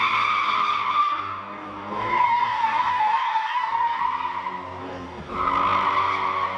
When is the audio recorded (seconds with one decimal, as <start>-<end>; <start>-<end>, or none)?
0.0-1.0; 4.0-4.8; 5.3-6.6